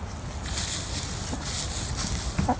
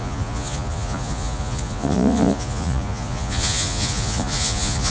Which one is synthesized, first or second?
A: second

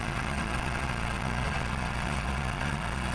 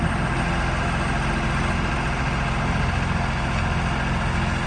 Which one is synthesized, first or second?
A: first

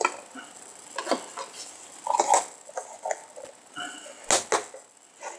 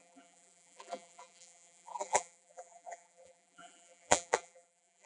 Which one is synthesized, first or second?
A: second